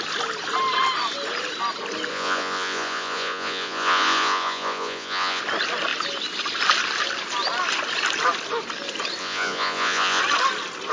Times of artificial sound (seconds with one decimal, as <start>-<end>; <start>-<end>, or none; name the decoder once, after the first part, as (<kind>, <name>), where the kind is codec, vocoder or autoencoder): 2.1-5.4 (vocoder, Vocos); 9.2-10.2